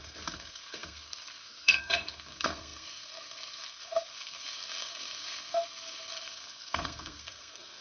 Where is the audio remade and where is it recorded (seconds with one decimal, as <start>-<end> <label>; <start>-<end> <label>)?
0.0-7.8 remade